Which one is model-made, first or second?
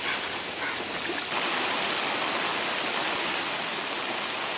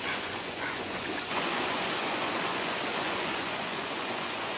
second